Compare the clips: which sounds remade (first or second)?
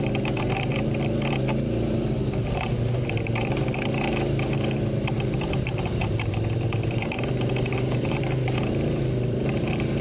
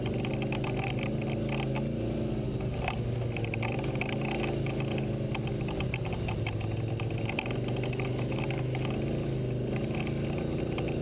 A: first